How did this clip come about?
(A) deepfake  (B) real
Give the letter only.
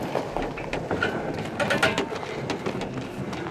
B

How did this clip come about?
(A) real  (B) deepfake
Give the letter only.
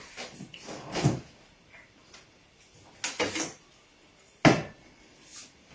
A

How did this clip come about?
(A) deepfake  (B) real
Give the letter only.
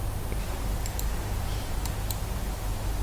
B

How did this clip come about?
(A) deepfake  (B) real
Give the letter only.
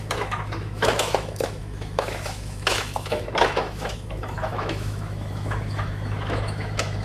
A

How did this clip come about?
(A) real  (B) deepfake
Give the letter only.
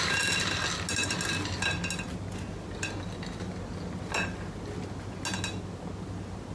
A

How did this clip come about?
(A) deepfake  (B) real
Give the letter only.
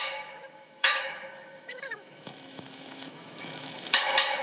A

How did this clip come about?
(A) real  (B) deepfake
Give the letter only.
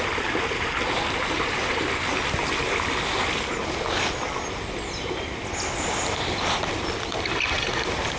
A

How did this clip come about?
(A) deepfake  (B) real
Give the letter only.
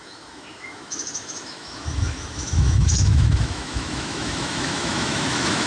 A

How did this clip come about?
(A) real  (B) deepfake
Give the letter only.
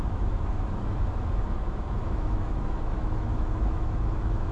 B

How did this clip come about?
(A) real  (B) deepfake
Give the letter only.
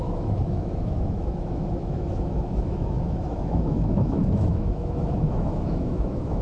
B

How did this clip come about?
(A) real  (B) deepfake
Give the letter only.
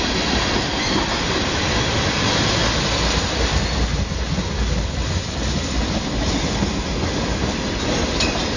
A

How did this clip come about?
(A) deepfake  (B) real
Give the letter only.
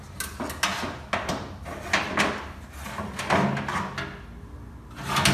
B